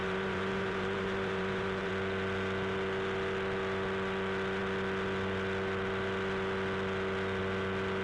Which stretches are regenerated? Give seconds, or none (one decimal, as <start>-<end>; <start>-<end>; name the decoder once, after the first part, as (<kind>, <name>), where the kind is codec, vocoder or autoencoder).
0.0-1.9 (vocoder, BigVGAN v2)